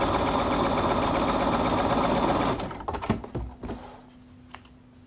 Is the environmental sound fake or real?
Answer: real